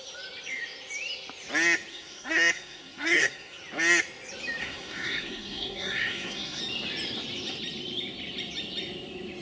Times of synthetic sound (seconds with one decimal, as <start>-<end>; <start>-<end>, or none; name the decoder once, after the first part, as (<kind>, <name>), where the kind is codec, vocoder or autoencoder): 1.9-3.6 (codec, SNAC); 4.6-6.6